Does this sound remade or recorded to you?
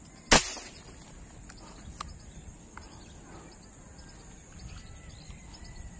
recorded